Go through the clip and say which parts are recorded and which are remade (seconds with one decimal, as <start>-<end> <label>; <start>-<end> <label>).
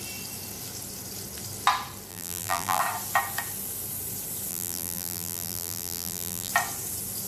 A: 0.0-2.1 recorded; 2.1-2.8 remade; 2.8-4.5 recorded; 4.5-6.5 remade; 6.5-7.3 recorded